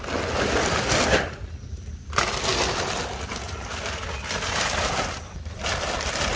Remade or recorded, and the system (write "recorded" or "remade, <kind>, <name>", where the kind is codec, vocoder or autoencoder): recorded